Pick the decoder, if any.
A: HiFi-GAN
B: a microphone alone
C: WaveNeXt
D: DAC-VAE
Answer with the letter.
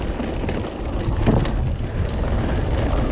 B